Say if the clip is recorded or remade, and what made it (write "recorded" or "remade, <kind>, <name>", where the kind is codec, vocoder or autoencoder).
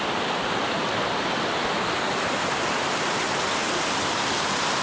recorded